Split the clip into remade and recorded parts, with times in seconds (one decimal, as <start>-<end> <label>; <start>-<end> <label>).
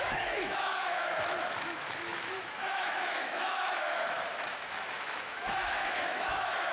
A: 0.0-6.7 remade